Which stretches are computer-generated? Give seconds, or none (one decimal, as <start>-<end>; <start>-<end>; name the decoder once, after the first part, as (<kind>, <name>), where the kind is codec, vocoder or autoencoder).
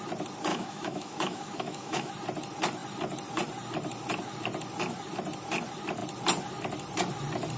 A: 0.5-2.1 (autoencoder, DAC-VAE)